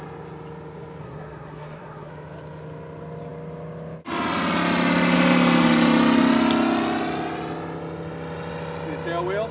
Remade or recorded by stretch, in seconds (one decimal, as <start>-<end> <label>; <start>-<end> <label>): 0.0-1.0 recorded; 1.0-2.1 remade; 2.1-9.5 recorded